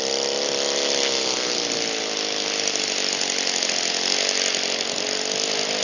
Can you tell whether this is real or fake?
real